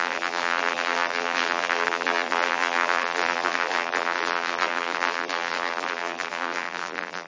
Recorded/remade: remade